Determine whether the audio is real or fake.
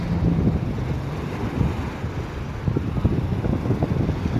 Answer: real